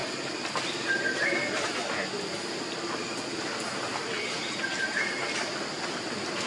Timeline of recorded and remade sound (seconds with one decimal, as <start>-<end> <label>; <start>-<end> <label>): 0.0-0.5 recorded; 0.5-3.9 remade; 3.9-5.1 recorded; 5.1-6.5 remade